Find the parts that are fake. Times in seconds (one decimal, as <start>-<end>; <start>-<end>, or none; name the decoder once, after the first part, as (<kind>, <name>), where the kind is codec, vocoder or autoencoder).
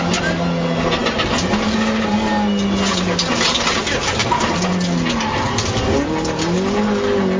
none